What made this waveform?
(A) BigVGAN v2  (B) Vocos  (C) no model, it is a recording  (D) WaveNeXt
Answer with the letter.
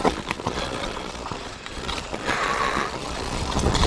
B